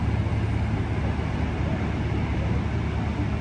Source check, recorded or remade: recorded